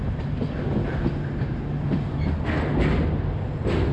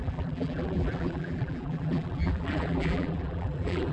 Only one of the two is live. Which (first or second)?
first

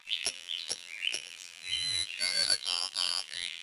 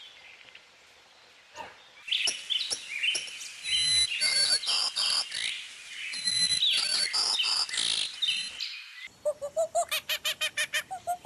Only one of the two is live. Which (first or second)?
second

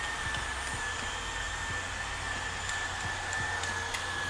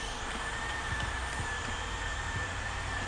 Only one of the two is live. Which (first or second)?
first